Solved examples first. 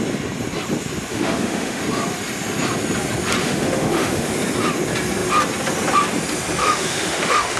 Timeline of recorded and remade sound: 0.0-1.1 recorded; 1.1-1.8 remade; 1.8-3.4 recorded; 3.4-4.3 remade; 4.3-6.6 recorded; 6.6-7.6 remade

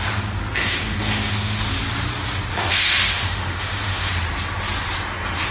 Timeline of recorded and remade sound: 0.0-0.6 recorded; 0.6-1.8 remade; 1.8-2.5 recorded; 2.5-4.1 remade; 4.1-5.5 recorded